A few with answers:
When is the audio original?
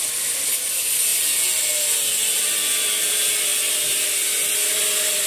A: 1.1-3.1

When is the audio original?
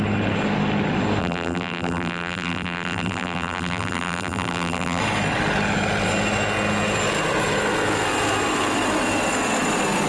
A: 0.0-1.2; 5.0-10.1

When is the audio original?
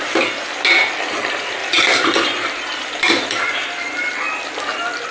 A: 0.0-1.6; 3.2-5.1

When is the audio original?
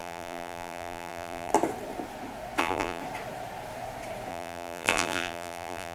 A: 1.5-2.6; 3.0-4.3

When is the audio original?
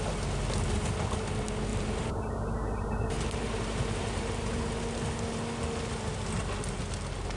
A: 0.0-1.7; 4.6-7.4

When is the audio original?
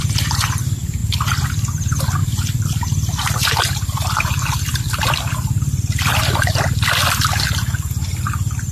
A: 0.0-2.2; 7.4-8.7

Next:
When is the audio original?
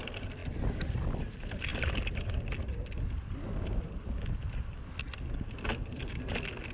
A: 0.0-6.7